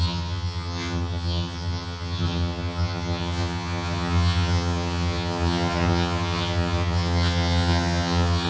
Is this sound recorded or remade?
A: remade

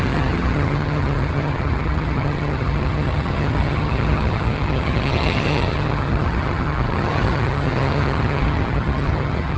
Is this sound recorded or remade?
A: remade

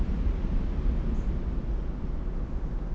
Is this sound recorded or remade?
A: recorded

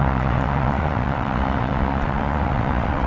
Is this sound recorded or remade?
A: remade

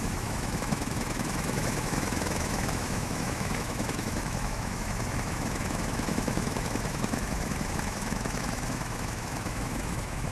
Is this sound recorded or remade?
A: remade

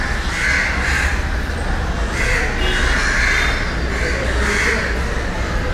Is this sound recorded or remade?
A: recorded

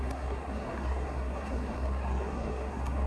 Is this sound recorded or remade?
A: remade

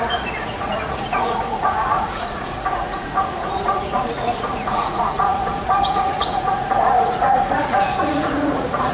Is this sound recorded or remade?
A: remade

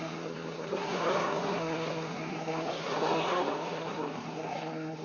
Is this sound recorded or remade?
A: remade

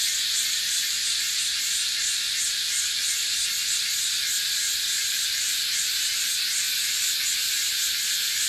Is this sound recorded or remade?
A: remade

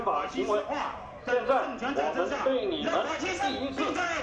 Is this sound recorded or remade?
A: recorded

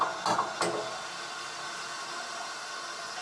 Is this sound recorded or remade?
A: recorded